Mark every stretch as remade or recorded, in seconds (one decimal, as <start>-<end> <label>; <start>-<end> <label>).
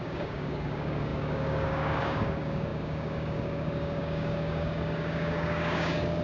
0.0-6.2 remade